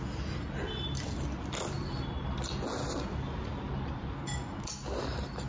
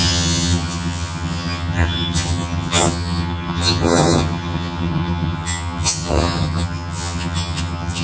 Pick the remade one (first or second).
second